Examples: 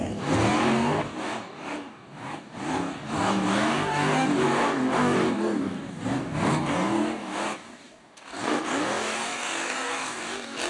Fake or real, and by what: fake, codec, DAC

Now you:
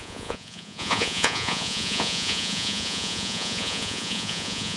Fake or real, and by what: fake, vocoder, Vocos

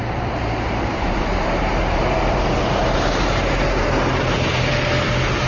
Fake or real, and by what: fake, vocoder, BigVGAN v2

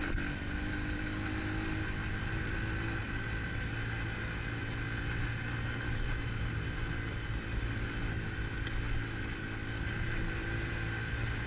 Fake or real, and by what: real